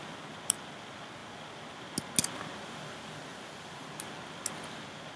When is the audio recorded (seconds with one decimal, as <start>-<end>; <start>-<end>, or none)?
0.0-3.3; 3.9-5.2